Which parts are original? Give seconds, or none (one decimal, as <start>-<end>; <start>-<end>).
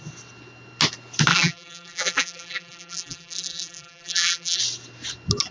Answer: 0.0-1.3; 4.6-5.5